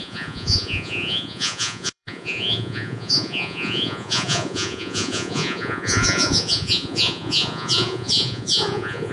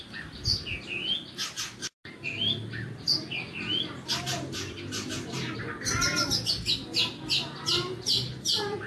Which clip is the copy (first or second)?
first